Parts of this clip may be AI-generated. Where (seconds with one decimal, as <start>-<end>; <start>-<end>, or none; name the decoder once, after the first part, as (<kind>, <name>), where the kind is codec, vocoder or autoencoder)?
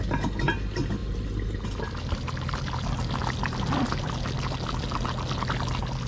none